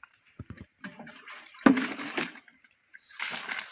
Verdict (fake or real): fake